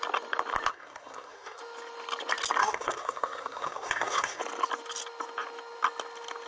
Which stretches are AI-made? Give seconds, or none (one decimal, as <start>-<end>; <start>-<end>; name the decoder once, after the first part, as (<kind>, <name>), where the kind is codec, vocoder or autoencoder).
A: 0.7-1.6 (codec, SNAC); 2.6-4.4